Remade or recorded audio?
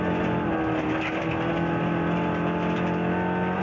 recorded